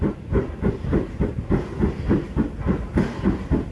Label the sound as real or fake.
real